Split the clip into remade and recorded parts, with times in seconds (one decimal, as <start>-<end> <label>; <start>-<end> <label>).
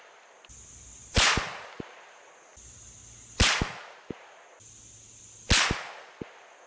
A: 0.0-6.7 recorded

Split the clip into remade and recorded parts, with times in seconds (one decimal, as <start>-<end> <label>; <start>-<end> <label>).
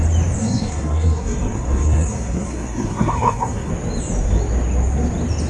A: 0.0-0.4 recorded; 0.4-3.7 remade; 3.7-5.5 recorded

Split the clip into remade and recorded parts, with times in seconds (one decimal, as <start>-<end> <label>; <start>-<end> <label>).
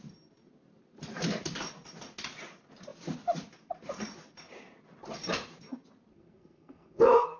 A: 0.0-6.1 recorded; 6.1-7.4 remade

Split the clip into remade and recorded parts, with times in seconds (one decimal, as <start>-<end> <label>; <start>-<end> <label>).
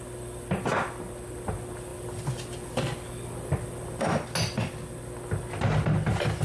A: 0.0-6.4 recorded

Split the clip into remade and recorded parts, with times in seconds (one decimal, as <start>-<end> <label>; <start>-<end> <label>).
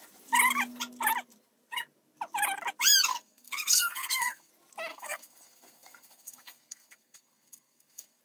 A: 0.0-3.1 recorded; 3.1-4.5 remade; 4.5-4.9 recorded; 4.9-8.2 remade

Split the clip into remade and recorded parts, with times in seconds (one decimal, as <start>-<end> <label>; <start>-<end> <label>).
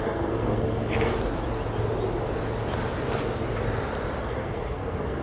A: 0.0-1.1 remade; 1.1-4.2 recorded; 4.2-5.2 remade